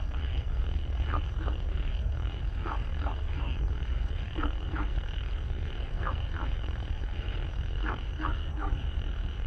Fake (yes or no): yes